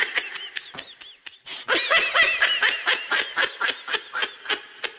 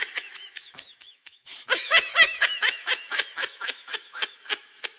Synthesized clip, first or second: second